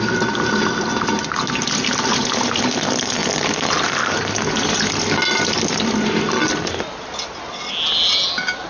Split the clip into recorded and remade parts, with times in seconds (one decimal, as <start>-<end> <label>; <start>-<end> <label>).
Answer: 0.0-8.7 recorded